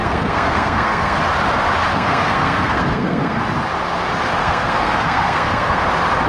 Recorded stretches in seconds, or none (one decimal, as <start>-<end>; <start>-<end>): 1.2-1.9; 3.4-4.4; 5.8-6.3

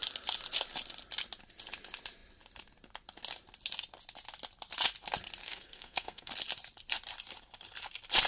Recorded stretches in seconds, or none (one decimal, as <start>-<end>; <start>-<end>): 0.0-5.4; 6.3-8.3